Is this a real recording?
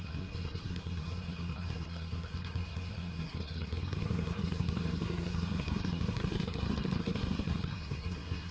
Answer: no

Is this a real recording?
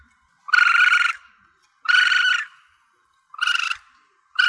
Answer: yes